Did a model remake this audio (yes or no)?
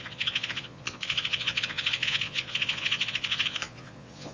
yes